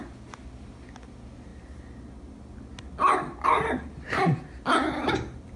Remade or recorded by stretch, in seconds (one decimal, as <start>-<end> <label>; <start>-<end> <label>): 0.0-5.6 recorded